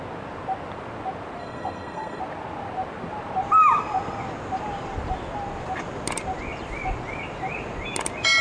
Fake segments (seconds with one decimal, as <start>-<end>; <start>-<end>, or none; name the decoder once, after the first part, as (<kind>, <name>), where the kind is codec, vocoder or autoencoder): 1.4-2.2 (codec, SNAC)

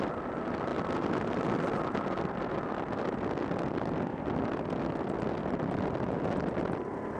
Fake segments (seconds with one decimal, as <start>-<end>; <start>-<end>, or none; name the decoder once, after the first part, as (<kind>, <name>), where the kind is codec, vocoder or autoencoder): none

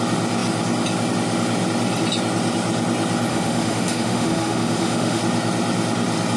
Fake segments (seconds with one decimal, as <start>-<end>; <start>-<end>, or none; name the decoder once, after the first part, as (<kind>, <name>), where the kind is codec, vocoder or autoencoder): 3.3-5.2 (autoencoder, DAC-VAE)

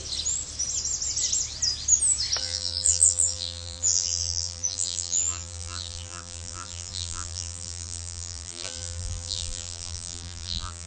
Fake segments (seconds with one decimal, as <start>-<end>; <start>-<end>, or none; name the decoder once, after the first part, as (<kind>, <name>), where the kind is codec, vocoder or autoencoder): 2.4-10.9 (vocoder, BigVGAN v2)

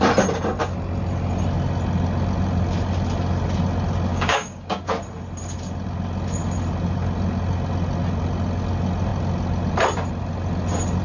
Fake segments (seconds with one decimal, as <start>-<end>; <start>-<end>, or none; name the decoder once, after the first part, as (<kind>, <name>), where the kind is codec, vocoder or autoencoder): 4.1-4.9 (codec, DAC)

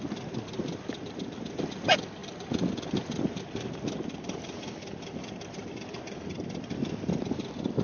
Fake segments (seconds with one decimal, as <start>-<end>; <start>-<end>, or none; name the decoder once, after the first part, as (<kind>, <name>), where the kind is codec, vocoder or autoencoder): none